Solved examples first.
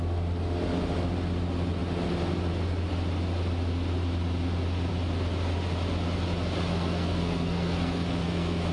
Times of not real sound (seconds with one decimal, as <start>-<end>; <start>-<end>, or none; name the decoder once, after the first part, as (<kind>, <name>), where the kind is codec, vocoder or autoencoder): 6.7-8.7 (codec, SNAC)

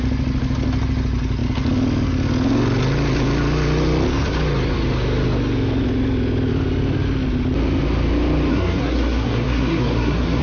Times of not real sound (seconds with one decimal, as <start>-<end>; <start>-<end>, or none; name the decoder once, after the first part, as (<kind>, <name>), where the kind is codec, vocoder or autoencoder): 8.5-10.4 (codec, SNAC)

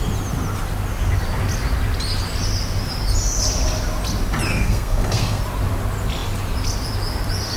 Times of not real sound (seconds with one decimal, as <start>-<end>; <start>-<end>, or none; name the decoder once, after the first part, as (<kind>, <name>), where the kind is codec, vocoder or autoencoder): 4.5-5.4 (codec, SNAC)

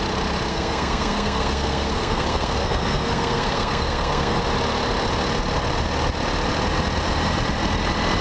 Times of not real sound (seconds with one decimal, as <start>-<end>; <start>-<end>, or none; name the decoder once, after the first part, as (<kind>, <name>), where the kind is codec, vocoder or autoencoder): 0.5-4.4 (codec, SNAC)

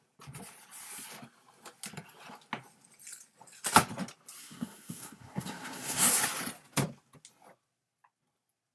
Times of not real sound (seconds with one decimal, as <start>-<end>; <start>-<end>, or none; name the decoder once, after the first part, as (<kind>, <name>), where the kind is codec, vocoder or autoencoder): 4.4-6.1 (codec, SNAC)